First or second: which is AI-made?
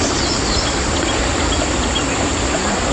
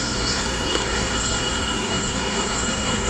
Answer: second